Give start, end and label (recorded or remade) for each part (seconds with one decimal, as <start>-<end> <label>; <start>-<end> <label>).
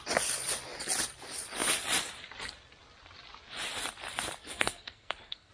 0.0-4.4 recorded; 4.4-5.5 remade